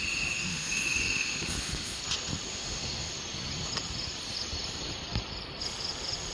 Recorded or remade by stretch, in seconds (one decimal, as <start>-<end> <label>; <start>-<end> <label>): 0.0-0.5 recorded; 0.5-2.0 remade; 2.0-2.5 recorded; 2.5-3.1 remade; 3.1-6.3 recorded